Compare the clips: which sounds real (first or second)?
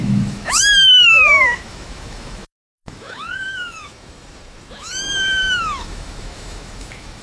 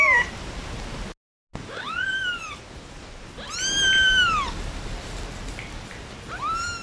second